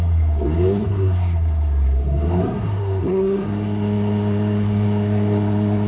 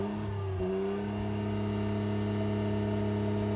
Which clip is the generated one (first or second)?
first